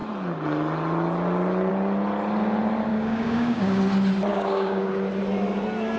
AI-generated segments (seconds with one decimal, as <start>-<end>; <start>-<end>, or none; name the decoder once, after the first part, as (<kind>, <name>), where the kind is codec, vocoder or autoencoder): 2.9-3.8 (codec, DAC); 4.3-4.9